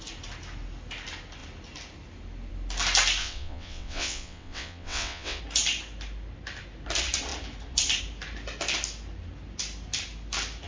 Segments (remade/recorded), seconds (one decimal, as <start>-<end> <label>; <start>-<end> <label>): 0.0-3.2 recorded; 3.2-5.4 remade; 5.4-10.7 recorded